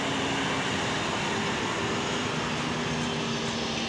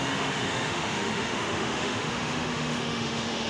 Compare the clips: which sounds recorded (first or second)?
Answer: first